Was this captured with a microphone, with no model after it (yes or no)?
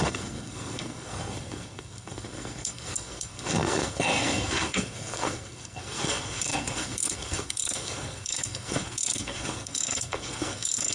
no